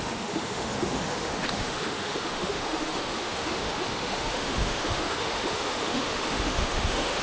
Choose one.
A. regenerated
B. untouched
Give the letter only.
A